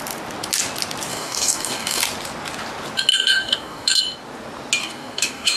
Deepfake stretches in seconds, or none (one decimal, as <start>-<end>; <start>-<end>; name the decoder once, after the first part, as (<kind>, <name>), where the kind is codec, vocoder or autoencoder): 1.1-2.0 (codec, DAC); 3.1-4.0; 4.8-5.6

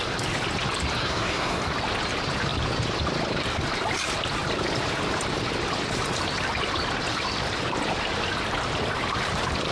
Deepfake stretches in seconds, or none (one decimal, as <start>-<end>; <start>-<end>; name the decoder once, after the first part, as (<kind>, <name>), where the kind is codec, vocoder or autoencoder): 1.0-1.6 (codec, SNAC)

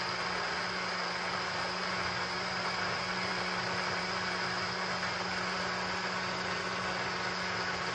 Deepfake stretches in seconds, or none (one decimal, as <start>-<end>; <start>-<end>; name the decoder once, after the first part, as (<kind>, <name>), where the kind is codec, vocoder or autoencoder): none

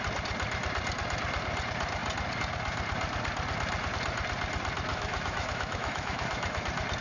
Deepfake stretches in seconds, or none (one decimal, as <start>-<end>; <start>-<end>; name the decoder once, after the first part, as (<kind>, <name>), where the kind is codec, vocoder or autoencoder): 4.9-6.6 (autoencoder, DAC-VAE)

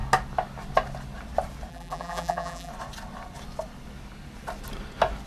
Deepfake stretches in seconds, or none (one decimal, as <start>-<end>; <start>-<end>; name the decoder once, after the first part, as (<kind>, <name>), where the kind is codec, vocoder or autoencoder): 1.7-2.7 (vocoder, BigVGAN v2)

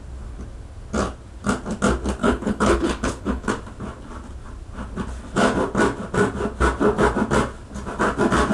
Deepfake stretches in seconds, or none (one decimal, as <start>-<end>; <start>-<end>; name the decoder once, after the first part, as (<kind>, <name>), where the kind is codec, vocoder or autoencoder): 2.2-3.5 (codec, HILCodec)

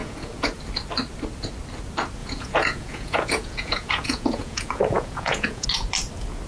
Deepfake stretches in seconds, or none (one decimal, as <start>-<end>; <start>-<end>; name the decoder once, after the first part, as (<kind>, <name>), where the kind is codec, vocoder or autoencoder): 0.0-0.6 (vocoder, Vocos); 2.2-5.7